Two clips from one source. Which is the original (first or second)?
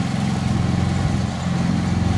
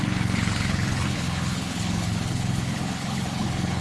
first